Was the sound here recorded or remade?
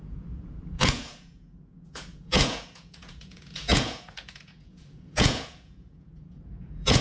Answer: remade